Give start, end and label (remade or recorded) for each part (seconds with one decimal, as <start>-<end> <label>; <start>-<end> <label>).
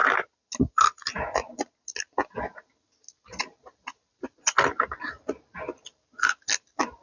0.0-7.0 recorded